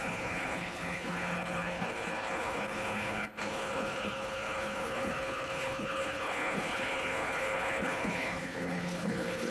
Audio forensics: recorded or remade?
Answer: remade